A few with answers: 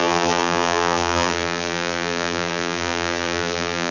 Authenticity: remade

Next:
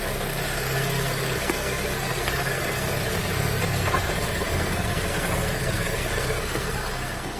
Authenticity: remade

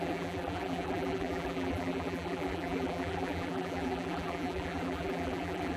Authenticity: remade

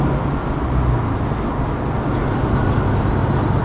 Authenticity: recorded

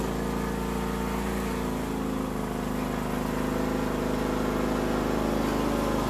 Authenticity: recorded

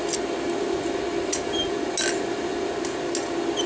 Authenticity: recorded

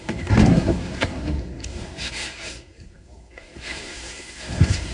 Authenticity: remade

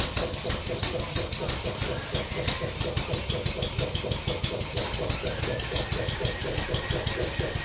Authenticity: recorded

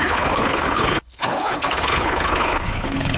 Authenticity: remade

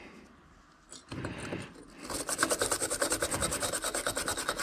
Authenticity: recorded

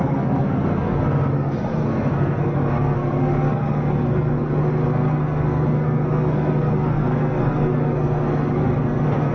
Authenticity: remade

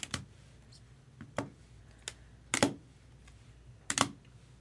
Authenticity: recorded